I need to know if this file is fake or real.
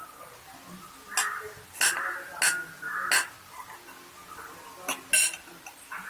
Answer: real